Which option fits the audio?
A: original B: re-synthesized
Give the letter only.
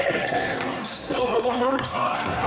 B